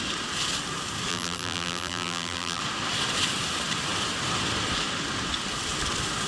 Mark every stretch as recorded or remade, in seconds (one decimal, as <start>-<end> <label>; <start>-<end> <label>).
0.0-1.1 recorded; 1.1-2.6 remade; 2.6-6.3 recorded